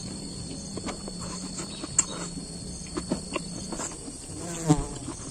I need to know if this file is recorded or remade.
recorded